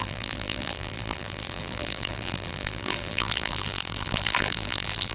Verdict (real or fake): fake